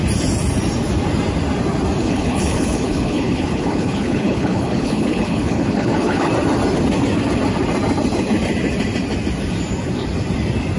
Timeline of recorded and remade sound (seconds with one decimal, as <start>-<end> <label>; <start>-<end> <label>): 0.0-2.0 recorded; 2.0-6.3 remade; 6.3-10.8 recorded